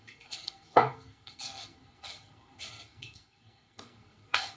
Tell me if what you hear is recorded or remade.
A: remade